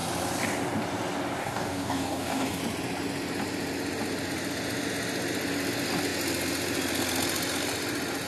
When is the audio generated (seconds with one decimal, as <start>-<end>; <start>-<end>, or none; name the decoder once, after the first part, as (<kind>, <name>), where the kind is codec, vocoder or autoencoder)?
1.4-2.6 (codec, DAC)